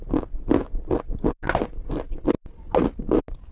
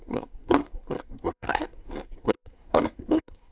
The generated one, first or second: second